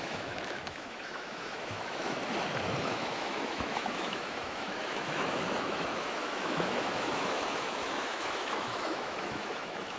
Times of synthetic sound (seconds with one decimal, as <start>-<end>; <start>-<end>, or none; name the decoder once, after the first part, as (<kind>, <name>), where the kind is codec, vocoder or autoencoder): 0.0-2.2 (autoencoder, DAC-VAE); 2.8-10.0